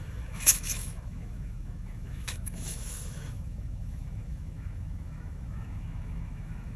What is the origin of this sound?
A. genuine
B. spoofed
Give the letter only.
B